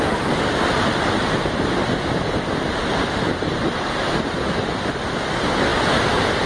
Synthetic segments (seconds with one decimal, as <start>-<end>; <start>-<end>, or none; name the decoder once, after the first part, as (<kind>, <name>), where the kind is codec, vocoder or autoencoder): none